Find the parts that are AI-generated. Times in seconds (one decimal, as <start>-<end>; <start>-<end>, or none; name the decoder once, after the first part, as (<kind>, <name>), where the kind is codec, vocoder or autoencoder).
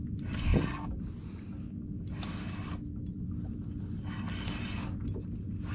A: none